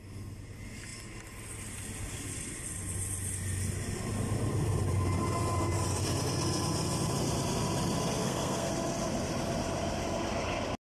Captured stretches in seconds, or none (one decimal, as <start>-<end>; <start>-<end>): 0.0-8.2; 8.7-10.8